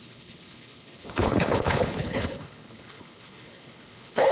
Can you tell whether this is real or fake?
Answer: fake